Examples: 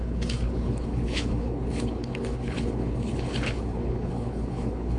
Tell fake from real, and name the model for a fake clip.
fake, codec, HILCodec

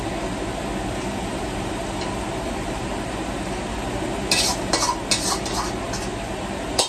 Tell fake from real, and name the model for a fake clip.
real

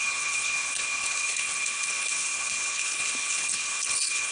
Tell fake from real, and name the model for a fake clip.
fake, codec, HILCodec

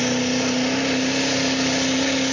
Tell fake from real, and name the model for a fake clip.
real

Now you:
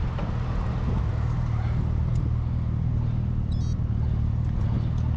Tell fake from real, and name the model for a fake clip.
real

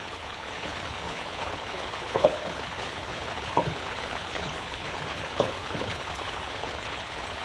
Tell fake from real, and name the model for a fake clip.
fake, codec, HILCodec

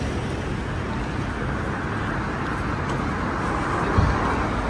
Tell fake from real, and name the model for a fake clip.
real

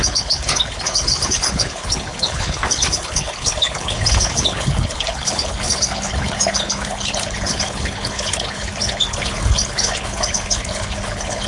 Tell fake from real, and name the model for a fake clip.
fake, codec, HILCodec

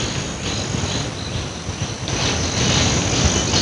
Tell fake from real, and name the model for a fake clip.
real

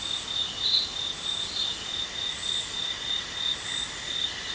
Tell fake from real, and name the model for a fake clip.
real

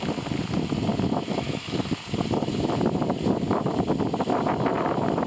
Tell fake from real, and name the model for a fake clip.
real